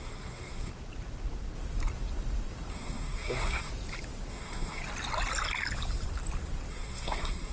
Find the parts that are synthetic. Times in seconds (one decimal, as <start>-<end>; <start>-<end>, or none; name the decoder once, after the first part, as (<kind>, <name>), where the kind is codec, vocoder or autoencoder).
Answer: 0.0-0.7 (codec, SNAC); 2.7-3.7; 4.3-4.8; 6.7-7.5